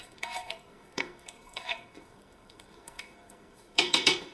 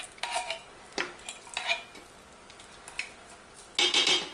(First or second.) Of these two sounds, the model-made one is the first